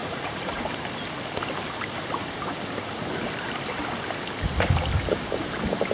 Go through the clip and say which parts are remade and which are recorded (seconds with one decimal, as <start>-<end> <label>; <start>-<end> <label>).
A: 0.0-0.6 remade; 0.6-5.9 recorded